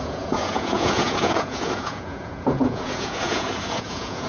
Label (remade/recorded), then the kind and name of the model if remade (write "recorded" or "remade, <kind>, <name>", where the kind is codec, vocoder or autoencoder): remade, vocoder, Vocos